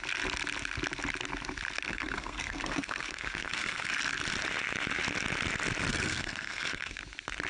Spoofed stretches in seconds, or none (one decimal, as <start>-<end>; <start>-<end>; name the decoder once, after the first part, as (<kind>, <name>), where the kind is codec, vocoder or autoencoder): 1.9-3.9 (codec, SNAC); 5.9-7.0